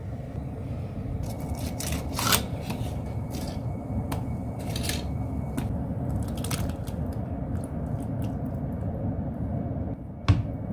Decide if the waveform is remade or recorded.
recorded